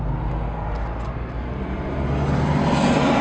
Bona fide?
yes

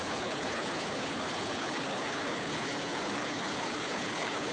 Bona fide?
no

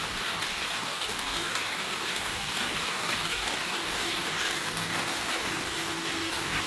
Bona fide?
no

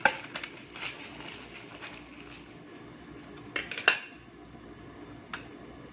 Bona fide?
yes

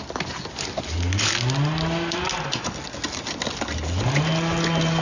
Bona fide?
yes